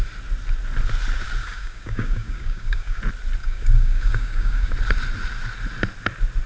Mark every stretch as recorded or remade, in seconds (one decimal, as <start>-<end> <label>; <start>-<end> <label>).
0.0-1.4 recorded; 1.4-3.0 remade; 3.0-3.4 recorded; 3.4-4.7 remade; 4.7-6.5 recorded